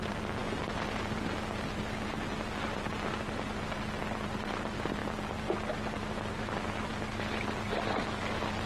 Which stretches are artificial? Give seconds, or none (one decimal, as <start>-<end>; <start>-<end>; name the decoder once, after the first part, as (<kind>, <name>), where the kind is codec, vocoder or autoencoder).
none